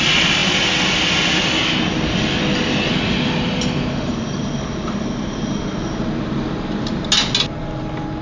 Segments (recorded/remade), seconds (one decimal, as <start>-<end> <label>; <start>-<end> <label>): 0.0-8.2 recorded